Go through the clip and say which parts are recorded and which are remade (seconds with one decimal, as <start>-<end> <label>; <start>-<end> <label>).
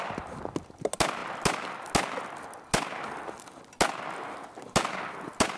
0.0-5.6 recorded